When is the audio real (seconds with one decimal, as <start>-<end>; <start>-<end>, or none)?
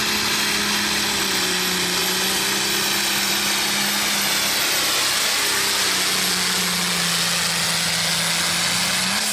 0.0-9.3